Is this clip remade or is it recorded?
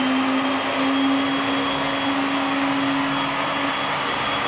recorded